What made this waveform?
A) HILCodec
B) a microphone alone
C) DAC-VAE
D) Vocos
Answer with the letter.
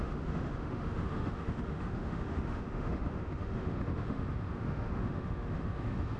C